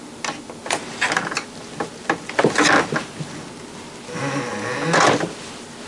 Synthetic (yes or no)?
no